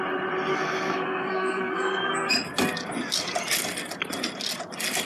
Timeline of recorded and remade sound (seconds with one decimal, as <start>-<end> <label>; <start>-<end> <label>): 0.0-0.5 recorded; 0.5-2.3 remade; 2.3-5.1 recorded